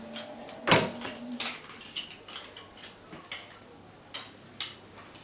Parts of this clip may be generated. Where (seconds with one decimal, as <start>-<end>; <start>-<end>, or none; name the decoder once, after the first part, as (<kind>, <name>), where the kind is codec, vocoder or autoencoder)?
none